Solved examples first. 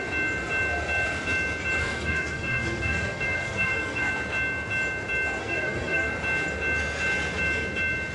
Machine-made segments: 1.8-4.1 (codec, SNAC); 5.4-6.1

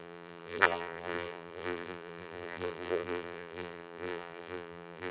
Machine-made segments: 0.0-5.1 (vocoder, BigVGAN v2)

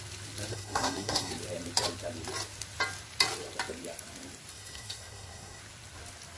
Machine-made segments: 0.5-1.3 (codec, SNAC); 4.5-5.6

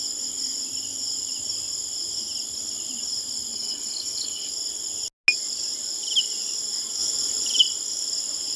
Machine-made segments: 3.5-4.5 (codec, HILCodec)

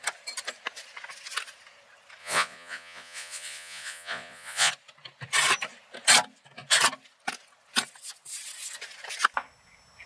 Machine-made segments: 2.2-4.7 (vocoder, Vocos)

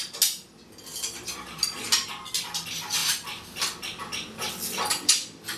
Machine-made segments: none

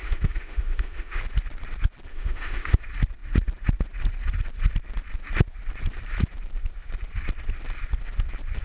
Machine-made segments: 0.0-1.2 (autoencoder, DAC-VAE); 2.1-2.8

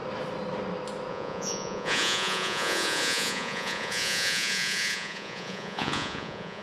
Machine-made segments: 1.1-6.6 (vocoder, Vocos)